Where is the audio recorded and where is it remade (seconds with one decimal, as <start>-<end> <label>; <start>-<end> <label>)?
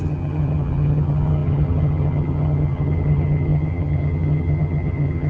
0.0-5.3 remade